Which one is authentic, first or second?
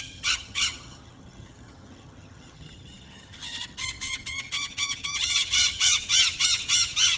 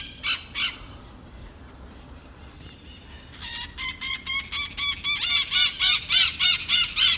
second